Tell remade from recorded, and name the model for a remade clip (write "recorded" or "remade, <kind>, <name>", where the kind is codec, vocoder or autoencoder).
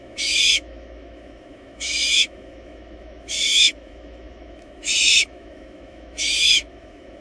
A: remade, autoencoder, DAC-VAE